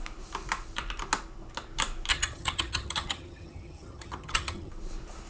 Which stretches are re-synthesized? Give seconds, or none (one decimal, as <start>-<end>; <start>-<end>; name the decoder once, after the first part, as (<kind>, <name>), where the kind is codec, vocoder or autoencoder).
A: 2.1-4.7 (vocoder, HiFi-GAN)